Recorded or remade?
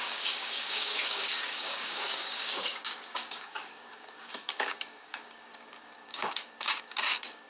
remade